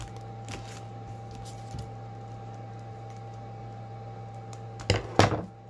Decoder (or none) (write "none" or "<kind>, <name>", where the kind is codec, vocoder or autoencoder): none